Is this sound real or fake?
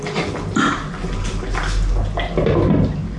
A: real